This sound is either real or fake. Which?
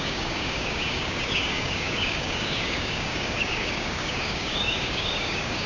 fake